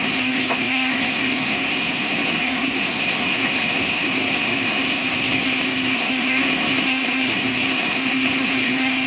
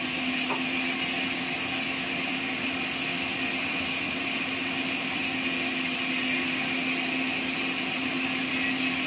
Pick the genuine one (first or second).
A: second